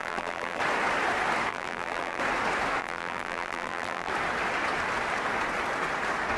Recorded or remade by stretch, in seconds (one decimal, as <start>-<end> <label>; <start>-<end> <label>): 0.0-0.6 remade; 0.6-1.5 recorded; 1.5-2.2 remade; 2.2-2.8 recorded; 2.8-4.1 remade; 4.1-6.4 recorded

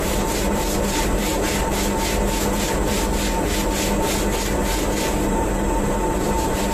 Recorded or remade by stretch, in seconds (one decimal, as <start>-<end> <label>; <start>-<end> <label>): 0.0-1.3 remade; 1.3-5.2 recorded; 5.2-6.7 remade

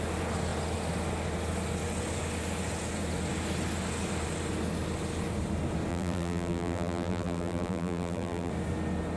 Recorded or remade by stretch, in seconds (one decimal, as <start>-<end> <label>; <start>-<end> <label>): 0.0-5.9 recorded; 5.9-8.5 remade; 8.5-9.2 recorded

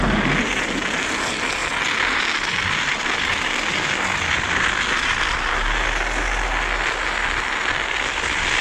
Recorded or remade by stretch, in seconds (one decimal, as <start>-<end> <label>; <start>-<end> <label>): 0.0-8.6 recorded

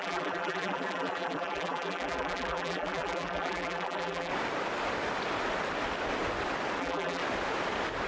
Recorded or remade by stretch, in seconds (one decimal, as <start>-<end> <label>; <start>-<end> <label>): 0.0-4.3 remade; 4.3-6.8 recorded; 6.8-7.2 remade; 7.2-8.1 recorded

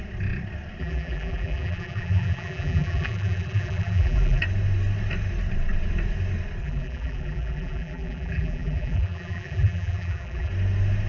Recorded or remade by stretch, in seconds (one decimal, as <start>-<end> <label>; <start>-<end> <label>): 0.0-0.8 recorded; 0.8-4.4 remade; 4.4-6.6 recorded; 6.6-10.5 remade; 10.5-11.1 recorded